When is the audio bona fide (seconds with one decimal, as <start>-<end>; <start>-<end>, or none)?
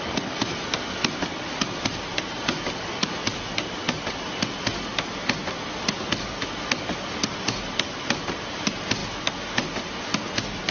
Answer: 9.0-10.7